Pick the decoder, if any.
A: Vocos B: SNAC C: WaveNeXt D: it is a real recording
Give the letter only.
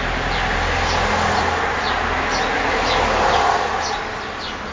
D